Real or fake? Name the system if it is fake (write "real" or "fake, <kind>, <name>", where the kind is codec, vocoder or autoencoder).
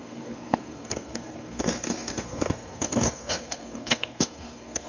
fake, codec, SNAC